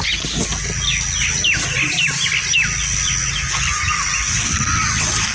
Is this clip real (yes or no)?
yes